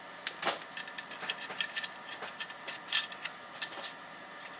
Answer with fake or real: real